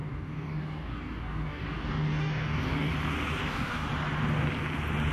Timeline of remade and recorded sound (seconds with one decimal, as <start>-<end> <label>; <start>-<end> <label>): 0.0-2.9 remade; 2.9-3.4 recorded; 3.4-3.9 remade; 3.9-5.1 recorded